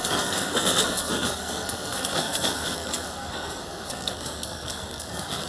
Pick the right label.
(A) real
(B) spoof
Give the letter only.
B